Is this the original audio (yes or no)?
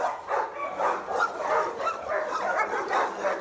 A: yes